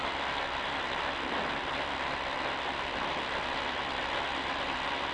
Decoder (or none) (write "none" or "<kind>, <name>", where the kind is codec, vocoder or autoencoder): none